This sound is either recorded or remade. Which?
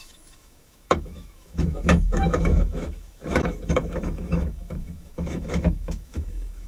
remade